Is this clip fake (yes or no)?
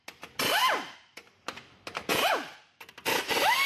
no